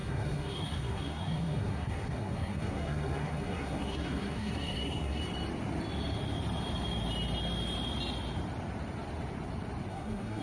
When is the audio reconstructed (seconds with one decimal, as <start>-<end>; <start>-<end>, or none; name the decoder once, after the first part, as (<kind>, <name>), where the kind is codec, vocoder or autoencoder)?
0.0-5.2 (codec, SNAC); 9.9-10.4